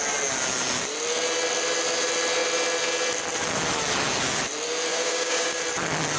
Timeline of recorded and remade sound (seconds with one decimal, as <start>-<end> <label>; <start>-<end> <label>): 0.0-4.9 recorded; 4.9-5.6 remade; 5.6-6.2 recorded